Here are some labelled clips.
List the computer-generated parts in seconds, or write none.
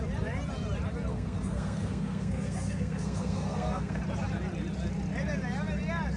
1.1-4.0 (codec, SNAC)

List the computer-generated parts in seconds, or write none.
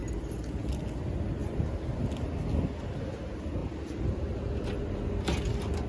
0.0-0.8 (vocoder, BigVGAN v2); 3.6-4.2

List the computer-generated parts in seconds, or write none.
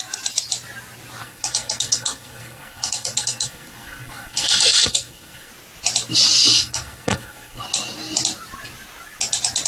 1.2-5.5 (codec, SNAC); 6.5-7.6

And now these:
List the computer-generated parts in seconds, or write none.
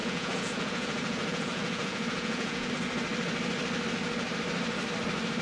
0.0-2.7 (vocoder, Vocos)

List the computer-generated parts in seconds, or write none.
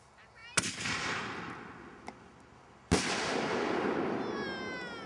none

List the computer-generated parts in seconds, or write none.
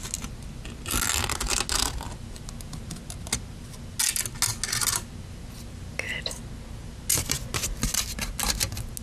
none